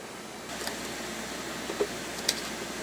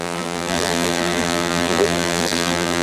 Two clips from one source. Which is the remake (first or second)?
second